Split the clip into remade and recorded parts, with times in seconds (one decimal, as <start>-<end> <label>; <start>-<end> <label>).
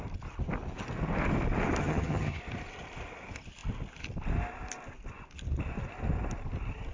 0.0-1.8 recorded; 1.8-2.4 remade; 2.4-6.9 recorded